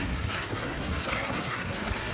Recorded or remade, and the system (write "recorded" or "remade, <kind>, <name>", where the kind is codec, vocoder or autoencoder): remade, codec, SNAC